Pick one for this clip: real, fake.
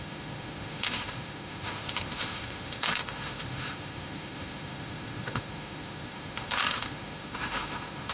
fake